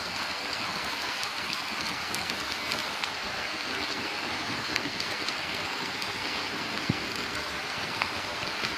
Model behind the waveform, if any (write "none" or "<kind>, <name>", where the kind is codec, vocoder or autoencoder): codec, SNAC